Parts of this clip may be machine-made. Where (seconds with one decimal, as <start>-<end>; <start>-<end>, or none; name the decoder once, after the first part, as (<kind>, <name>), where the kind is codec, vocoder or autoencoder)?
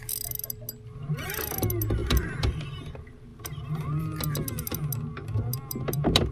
2.0-2.9 (vocoder, BigVGAN v2); 5.3-6.3